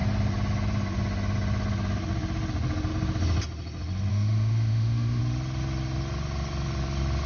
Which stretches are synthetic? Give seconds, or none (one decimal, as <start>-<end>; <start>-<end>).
4.1-5.2